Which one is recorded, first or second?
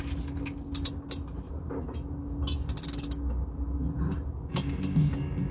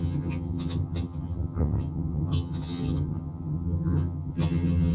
first